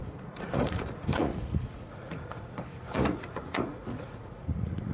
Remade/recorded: remade